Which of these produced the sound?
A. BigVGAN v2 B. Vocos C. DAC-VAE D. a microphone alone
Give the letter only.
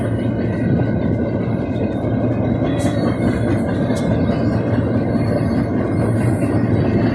D